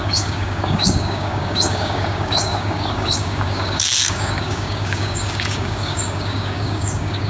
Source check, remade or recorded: remade